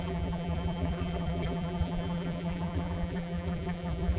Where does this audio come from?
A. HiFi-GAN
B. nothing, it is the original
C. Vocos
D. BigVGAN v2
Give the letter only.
D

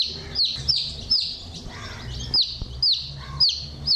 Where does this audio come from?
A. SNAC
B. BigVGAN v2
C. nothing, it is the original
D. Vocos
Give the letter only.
C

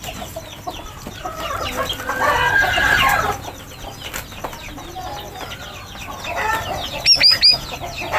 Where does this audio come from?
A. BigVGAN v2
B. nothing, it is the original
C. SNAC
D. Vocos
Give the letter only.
B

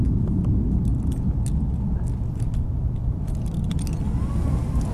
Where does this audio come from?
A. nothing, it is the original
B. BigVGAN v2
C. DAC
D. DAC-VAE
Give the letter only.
A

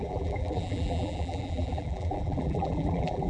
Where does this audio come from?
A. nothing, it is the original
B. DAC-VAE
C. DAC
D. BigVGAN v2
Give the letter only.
D